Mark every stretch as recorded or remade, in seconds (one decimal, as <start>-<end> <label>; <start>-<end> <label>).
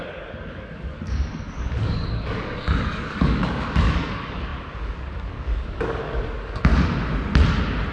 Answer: 0.0-6.7 remade; 6.7-7.9 recorded